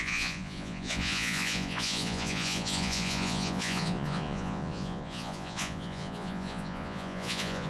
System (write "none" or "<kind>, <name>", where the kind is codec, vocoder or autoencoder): vocoder, Vocos